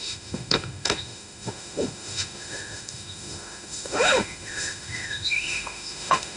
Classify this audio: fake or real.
fake